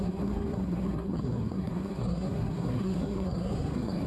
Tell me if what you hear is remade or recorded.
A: remade